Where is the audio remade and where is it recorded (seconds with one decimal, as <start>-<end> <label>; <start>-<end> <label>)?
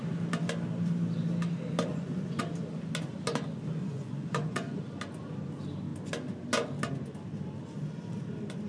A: 0.0-1.9 recorded; 1.9-2.4 remade; 2.4-3.8 recorded; 3.8-4.8 remade; 4.8-8.7 recorded